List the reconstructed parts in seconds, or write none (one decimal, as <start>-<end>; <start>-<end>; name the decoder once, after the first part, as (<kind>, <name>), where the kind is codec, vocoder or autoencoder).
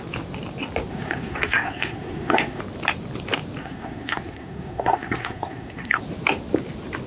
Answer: 0.9-2.6 (codec, SNAC); 3.6-6.0